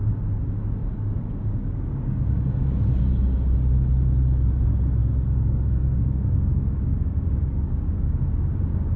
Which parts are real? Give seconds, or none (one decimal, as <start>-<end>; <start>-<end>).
0.0-0.8; 2.9-5.0; 8.2-9.0

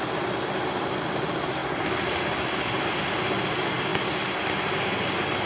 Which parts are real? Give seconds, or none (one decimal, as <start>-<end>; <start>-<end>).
0.0-5.5

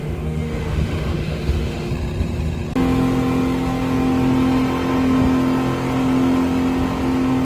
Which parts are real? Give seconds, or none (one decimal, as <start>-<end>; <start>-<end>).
1.9-7.4

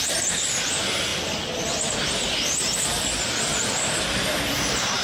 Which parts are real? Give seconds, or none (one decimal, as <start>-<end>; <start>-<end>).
0.0-5.0

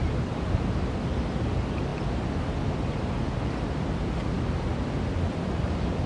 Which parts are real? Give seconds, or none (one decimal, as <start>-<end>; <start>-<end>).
0.0-6.1

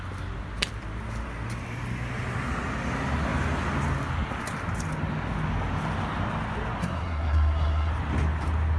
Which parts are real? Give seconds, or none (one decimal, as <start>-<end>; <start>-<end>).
0.0-6.8; 7.9-8.8

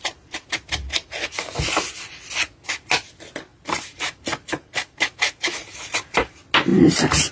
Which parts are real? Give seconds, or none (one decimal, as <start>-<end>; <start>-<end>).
0.0-3.5; 6.3-6.7

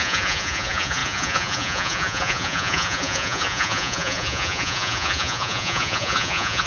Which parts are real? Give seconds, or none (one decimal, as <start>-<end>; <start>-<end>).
none